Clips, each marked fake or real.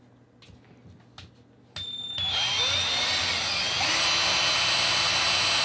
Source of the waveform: real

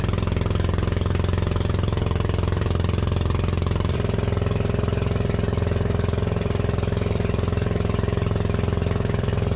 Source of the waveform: fake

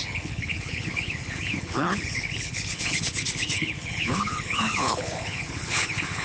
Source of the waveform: fake